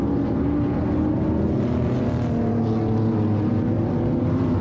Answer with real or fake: real